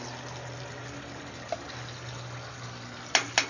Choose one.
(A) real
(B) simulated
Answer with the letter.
A